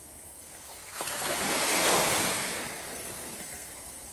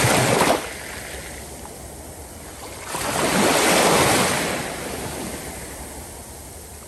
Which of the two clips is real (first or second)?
second